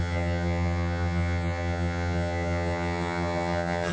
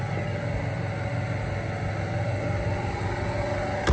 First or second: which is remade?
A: first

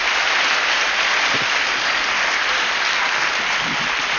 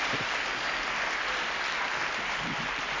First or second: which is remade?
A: first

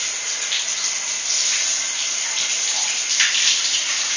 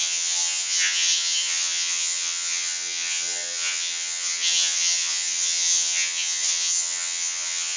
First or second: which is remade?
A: second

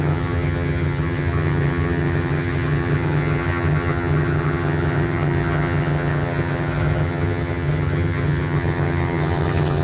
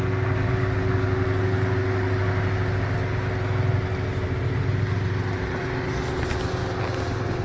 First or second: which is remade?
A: first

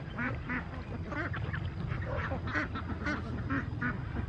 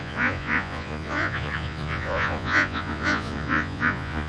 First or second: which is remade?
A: second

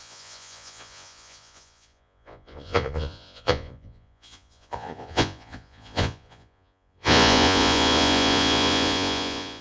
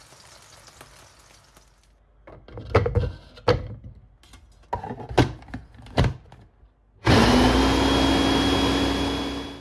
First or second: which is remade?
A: first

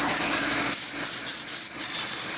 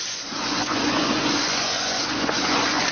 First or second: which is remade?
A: second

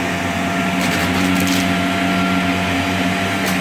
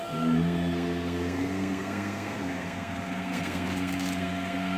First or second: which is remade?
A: second